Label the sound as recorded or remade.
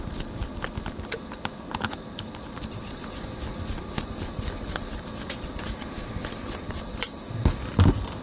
recorded